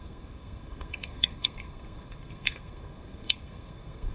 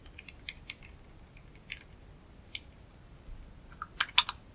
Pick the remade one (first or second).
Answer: first